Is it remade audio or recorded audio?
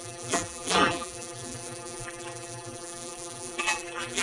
remade